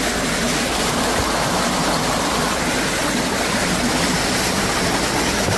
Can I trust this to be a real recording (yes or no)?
yes